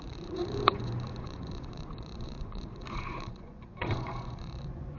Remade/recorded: remade